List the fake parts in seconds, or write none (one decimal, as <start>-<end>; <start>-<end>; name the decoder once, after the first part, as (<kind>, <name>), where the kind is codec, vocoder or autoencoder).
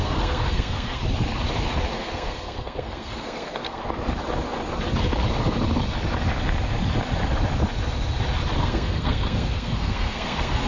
0.0-1.0 (codec, SNAC); 1.9-3.8; 8.6-10.7